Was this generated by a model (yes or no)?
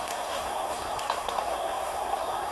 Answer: yes